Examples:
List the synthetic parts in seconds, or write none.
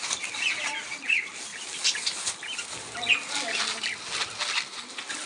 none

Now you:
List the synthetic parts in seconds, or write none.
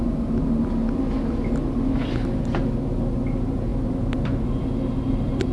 3.7-5.5 (vocoder, BigVGAN v2)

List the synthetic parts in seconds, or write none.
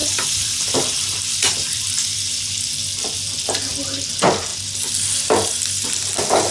0.0-2.4 (vocoder, BigVGAN v2)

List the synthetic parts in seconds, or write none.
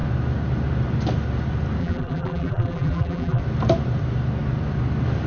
1.8-3.4 (vocoder, BigVGAN v2)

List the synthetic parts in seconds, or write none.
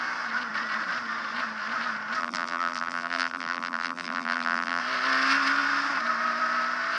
2.2-4.8 (vocoder, BigVGAN v2)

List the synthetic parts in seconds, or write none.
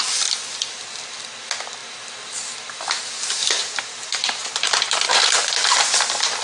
3.6-5.5 (vocoder, BigVGAN v2)